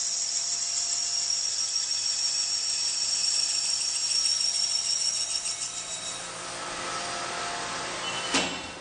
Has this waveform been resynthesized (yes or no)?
no